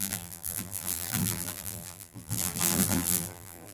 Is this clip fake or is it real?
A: fake